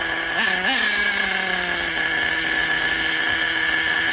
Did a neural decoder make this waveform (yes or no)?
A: no